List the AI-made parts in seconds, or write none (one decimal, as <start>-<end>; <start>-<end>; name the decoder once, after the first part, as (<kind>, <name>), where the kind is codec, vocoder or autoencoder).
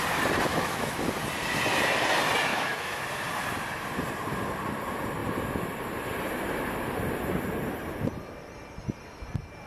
0.5-1.0 (autoencoder, DAC-VAE); 2.5-3.0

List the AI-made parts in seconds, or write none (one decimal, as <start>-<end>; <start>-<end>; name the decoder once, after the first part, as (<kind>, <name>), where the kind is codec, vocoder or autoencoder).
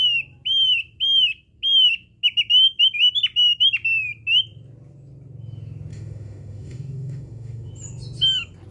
5.9-7.7 (autoencoder, DAC-VAE)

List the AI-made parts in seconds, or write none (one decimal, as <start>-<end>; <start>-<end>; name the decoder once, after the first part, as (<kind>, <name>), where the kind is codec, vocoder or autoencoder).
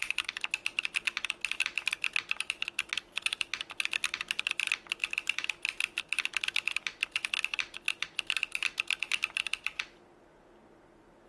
none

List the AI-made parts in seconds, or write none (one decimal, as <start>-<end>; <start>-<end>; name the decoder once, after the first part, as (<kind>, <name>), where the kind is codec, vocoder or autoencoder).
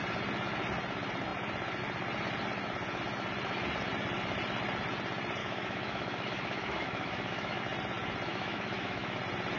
5.4-7.6 (autoencoder, DAC-VAE); 8.3-9.2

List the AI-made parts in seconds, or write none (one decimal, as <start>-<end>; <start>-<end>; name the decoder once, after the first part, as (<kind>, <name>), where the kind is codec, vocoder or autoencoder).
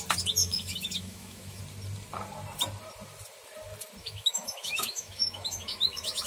0.4-1.6 (autoencoder, DAC-VAE); 4.0-6.3